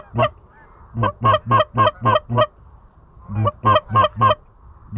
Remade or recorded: recorded